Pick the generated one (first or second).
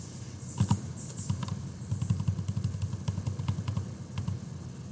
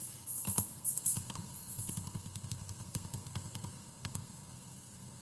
second